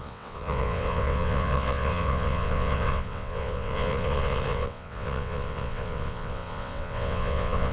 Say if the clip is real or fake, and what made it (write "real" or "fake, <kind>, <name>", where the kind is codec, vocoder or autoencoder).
fake, vocoder, WaveNeXt